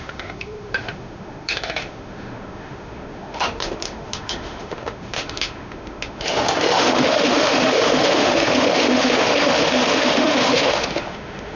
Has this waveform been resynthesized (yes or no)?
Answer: yes